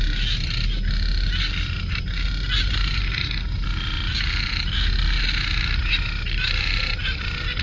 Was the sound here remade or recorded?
recorded